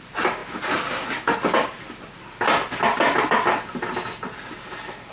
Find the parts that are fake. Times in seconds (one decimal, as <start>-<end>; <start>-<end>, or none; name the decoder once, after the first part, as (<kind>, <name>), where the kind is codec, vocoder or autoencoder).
none